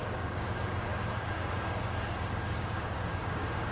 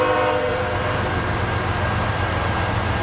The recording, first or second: second